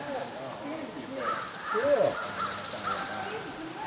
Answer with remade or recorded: recorded